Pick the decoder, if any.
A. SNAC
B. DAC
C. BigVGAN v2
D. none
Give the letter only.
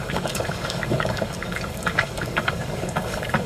B